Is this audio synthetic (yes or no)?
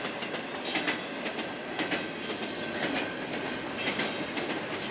no